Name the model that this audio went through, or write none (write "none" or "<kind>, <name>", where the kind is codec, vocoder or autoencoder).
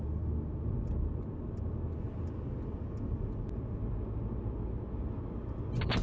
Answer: none